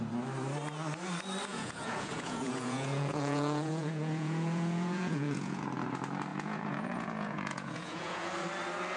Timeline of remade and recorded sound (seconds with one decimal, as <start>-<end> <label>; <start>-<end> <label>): 0.0-1.5 recorded; 1.5-5.6 remade; 5.6-6.3 recorded; 6.3-8.3 remade; 8.3-9.0 recorded